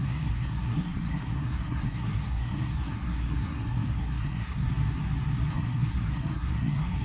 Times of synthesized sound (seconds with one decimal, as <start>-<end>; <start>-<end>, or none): 0.0-4.7; 5.5-7.0